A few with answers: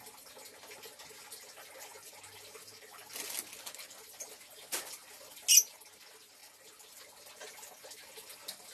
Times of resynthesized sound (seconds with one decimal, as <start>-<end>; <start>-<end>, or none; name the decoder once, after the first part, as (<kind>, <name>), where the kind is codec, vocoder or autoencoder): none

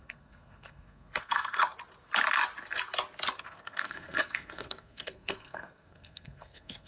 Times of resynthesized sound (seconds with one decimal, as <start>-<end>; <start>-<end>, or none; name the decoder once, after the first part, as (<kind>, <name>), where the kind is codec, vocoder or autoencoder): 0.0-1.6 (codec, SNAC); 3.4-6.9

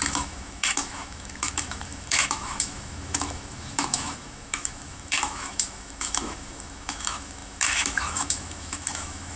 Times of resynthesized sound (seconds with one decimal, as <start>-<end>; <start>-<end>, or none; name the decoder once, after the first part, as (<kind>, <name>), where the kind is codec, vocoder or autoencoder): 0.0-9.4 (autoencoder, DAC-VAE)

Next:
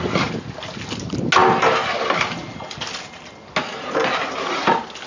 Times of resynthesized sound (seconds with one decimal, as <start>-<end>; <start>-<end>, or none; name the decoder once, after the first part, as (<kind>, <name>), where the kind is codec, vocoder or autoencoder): none